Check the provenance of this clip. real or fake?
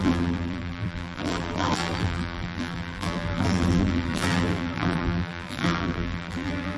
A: fake